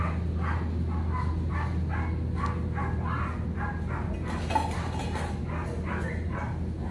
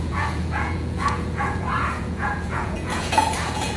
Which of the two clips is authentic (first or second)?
first